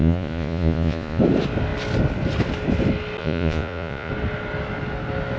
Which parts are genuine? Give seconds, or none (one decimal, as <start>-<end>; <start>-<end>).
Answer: 1.2-3.2; 4.1-5.4